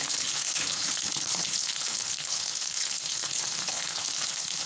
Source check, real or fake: fake